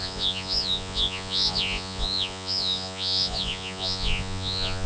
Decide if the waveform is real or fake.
fake